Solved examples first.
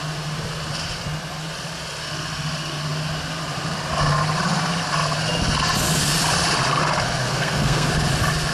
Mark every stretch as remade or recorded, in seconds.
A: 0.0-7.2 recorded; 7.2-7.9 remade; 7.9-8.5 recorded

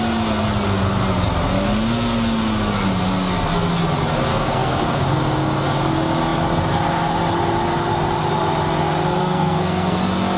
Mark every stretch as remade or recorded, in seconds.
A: 0.0-4.3 recorded; 4.3-5.0 remade; 5.0-9.2 recorded; 9.2-10.0 remade; 10.0-10.4 recorded

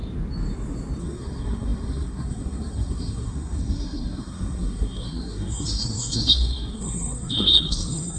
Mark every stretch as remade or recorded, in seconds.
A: 0.0-1.0 recorded; 1.0-8.2 remade

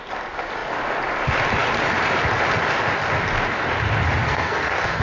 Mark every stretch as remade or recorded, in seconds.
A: 0.0-4.2 recorded; 4.2-5.0 remade

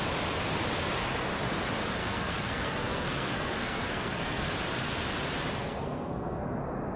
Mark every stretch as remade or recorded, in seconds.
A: 0.0-2.0 recorded; 2.0-4.4 remade; 4.4-5.6 recorded; 5.6-6.6 remade; 6.6-7.0 recorded